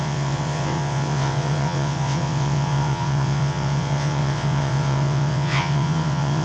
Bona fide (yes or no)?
no